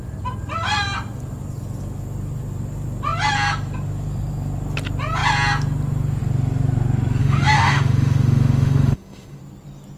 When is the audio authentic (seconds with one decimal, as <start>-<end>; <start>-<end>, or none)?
0.0-7.2; 9.4-10.0

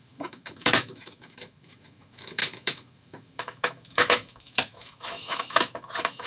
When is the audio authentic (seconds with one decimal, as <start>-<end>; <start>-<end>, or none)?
none